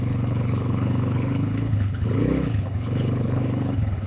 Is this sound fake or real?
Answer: fake